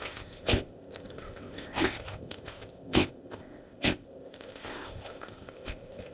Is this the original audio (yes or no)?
no